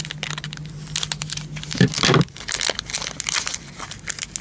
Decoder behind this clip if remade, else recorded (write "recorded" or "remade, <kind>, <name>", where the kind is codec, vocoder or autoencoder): recorded